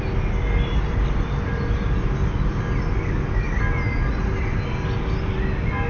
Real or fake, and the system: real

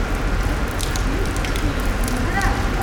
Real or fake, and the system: real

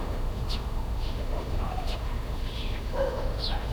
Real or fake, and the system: fake, autoencoder, DAC-VAE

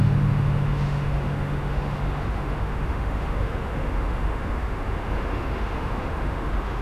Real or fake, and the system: fake, autoencoder, DAC-VAE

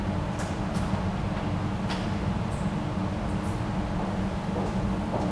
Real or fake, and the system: real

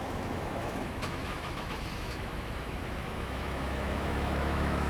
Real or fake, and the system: fake, autoencoder, DAC-VAE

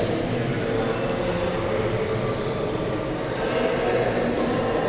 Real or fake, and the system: real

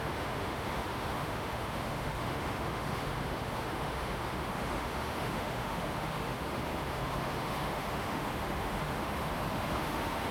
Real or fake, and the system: fake, autoencoder, DAC-VAE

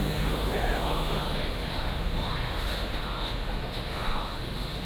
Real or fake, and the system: fake, autoencoder, DAC-VAE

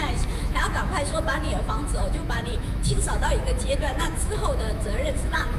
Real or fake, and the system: fake, autoencoder, DAC-VAE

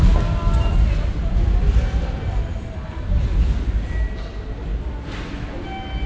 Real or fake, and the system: real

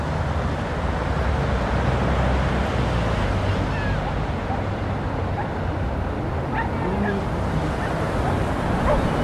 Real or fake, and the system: real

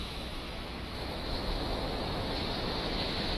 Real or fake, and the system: fake, autoencoder, DAC-VAE